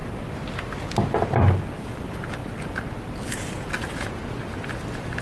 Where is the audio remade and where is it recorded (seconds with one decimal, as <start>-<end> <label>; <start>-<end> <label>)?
0.0-5.2 recorded